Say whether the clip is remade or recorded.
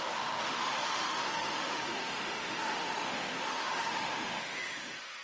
remade